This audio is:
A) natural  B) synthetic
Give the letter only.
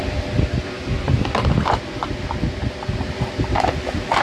A